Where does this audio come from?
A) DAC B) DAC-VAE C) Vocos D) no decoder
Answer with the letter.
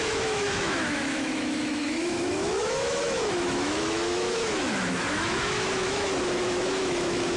B